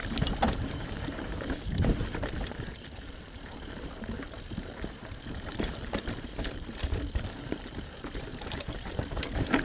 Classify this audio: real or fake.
fake